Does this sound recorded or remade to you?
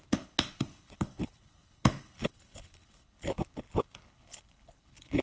remade